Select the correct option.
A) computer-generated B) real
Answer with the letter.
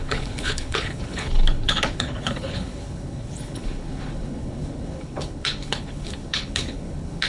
A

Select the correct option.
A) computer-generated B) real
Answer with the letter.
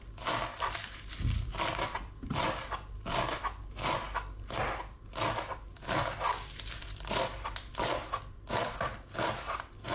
B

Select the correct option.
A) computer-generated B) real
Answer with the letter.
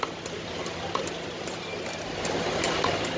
B